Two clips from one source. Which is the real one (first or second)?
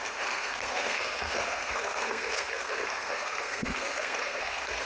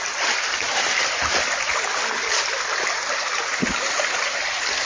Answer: second